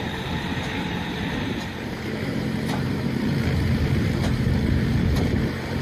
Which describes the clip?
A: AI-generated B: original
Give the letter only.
A